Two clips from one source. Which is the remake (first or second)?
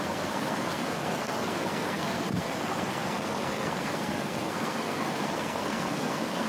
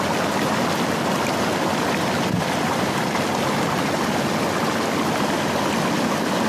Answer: first